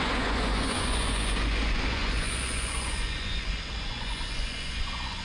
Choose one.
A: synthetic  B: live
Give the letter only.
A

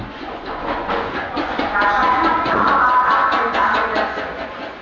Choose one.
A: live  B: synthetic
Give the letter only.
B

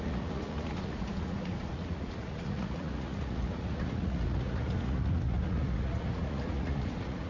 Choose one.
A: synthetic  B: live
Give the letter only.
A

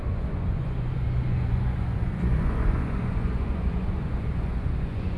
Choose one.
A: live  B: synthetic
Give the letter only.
B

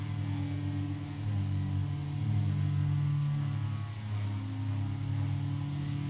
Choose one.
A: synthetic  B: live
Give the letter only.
B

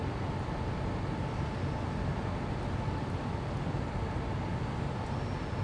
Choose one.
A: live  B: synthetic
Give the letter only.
A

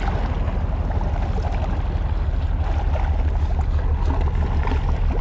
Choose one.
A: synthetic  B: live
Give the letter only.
B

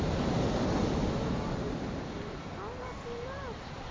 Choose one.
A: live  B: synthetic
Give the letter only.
A